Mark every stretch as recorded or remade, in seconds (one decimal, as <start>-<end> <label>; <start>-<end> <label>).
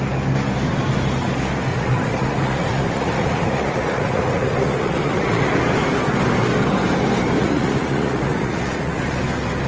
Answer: 0.0-1.7 recorded; 1.7-5.5 remade; 5.5-7.4 recorded; 7.4-9.2 remade; 9.2-9.7 recorded